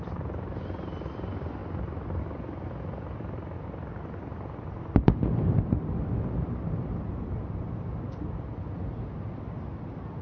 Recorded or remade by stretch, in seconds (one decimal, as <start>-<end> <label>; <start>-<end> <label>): 0.0-1.6 recorded; 1.6-2.2 remade; 2.2-10.2 recorded